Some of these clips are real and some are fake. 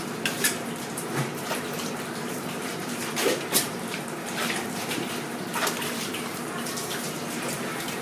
fake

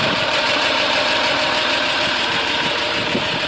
fake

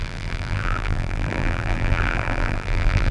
fake